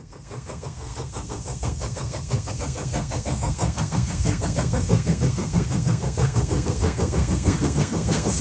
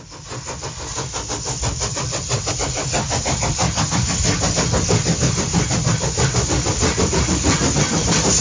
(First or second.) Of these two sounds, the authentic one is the second